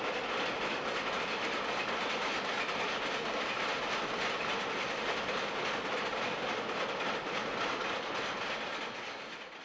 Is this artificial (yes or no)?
no